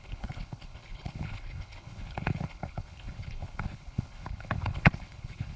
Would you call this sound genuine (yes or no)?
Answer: no